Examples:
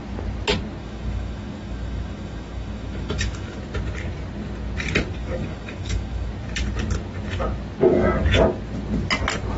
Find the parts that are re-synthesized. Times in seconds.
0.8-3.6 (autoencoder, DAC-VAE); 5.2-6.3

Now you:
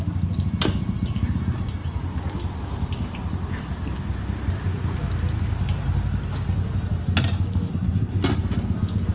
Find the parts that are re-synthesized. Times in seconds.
7.7-8.2 (codec, SNAC)

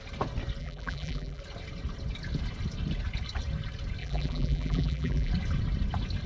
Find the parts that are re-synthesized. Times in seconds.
0.6-1.4 (vocoder, BigVGAN v2); 4.0-5.3

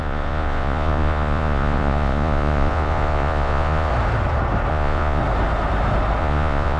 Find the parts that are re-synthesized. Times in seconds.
0.0-3.9 (vocoder, Vocos); 4.7-5.2; 6.2-6.8

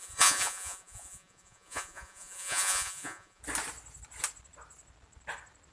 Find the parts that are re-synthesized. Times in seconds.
0.0-3.4 (vocoder, Vocos)